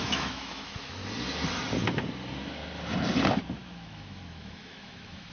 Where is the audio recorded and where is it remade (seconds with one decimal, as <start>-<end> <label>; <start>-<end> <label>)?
0.0-1.0 remade; 1.0-3.5 recorded; 3.5-5.3 remade